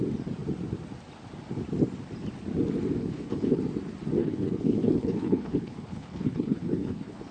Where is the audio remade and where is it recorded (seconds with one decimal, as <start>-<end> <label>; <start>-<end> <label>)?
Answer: 0.0-3.0 recorded; 3.0-3.6 remade; 3.6-4.2 recorded; 4.2-7.3 remade